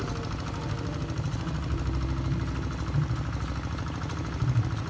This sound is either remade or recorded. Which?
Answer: recorded